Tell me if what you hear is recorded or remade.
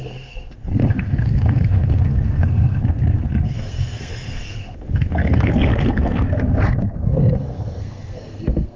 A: remade